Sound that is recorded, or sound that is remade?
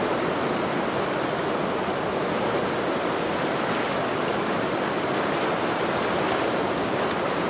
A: recorded